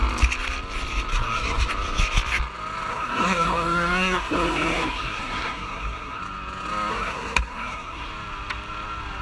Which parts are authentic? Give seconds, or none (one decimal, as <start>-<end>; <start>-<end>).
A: 0.0-1.1; 1.7-2.9; 6.2-6.9; 8.1-9.2